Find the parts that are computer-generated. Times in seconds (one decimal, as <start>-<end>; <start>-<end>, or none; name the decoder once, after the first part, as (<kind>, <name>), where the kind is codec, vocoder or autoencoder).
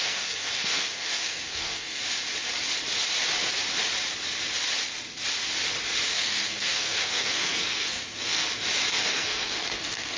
0.0-2.0 (codec, SNAC); 6.1-8.4; 8.9-10.2